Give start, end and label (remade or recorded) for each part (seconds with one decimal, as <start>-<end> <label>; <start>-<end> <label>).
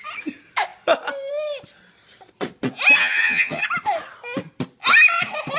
0.0-3.0 recorded; 3.0-3.6 remade; 3.6-5.6 recorded